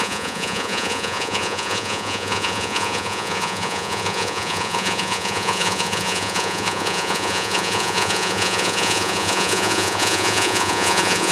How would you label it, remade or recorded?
remade